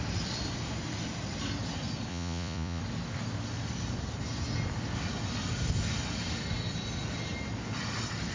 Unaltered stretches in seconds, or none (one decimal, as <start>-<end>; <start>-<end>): 0.0-2.1; 2.8-8.3